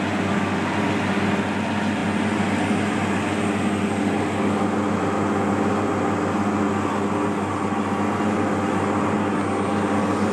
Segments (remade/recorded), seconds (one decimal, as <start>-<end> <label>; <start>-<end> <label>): 0.0-10.3 recorded